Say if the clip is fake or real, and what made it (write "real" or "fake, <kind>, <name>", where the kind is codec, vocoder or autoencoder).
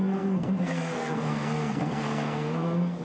fake, codec, SNAC